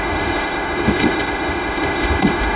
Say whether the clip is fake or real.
fake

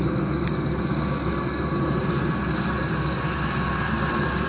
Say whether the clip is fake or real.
real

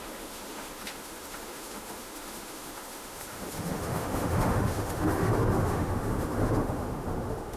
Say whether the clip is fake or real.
fake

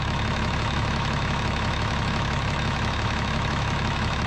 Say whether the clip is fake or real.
fake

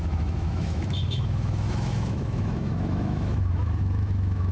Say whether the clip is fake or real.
fake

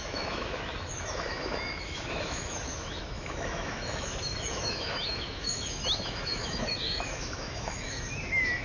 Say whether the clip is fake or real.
fake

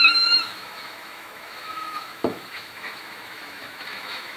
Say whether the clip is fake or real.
fake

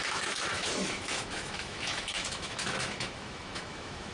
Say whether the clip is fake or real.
fake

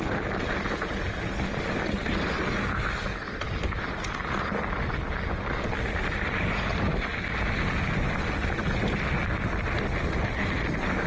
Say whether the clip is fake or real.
real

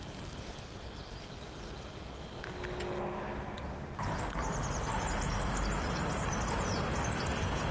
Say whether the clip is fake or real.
real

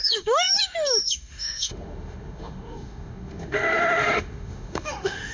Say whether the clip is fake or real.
fake